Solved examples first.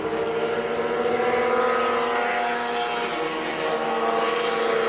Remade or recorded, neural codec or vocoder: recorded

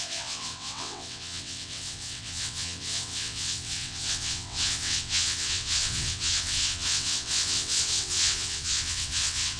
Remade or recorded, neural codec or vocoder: remade, vocoder, WaveNeXt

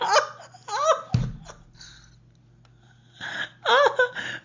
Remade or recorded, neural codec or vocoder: recorded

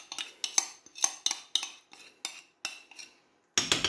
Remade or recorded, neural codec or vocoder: recorded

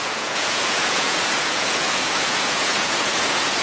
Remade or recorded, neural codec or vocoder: remade, vocoder, Vocos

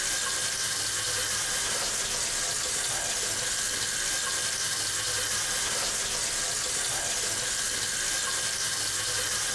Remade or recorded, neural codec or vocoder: recorded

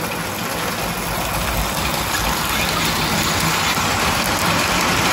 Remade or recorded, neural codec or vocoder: recorded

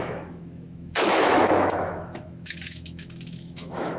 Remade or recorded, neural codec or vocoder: remade, autoencoder, DAC-VAE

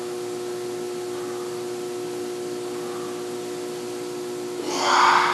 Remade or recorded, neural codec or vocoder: recorded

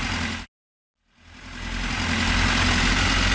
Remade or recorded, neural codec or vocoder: recorded